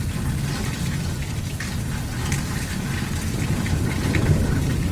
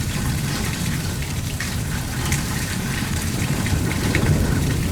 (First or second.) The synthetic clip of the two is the second